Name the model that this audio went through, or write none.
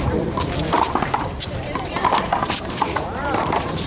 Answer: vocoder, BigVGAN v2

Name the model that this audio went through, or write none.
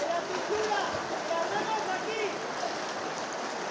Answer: none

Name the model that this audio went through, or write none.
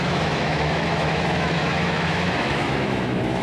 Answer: autoencoder, DAC-VAE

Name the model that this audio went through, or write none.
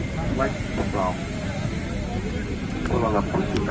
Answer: none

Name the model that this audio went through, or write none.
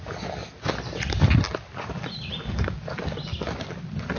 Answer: none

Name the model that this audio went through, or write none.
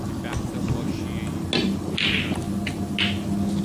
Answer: none